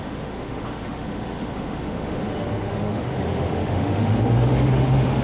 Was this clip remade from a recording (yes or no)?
yes